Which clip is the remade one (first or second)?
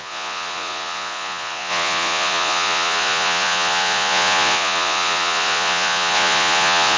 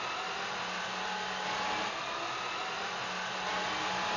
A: first